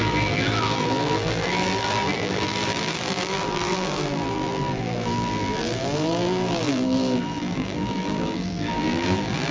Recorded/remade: remade